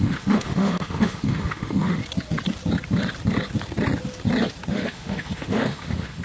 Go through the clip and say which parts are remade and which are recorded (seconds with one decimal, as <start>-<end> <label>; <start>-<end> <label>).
0.0-2.0 remade; 2.0-4.7 recorded; 4.7-6.2 remade